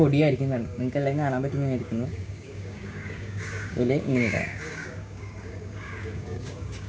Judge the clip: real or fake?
fake